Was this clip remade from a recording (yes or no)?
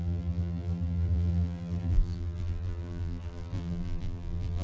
yes